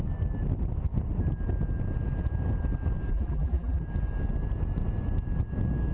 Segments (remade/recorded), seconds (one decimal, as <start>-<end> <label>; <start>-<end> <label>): 0.0-3.1 recorded; 3.1-3.8 remade; 3.8-5.9 recorded